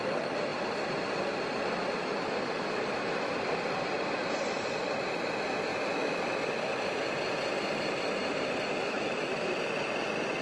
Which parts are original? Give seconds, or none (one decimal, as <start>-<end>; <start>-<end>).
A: 0.0-2.0; 3.3-5.7; 6.2-8.8; 9.5-10.4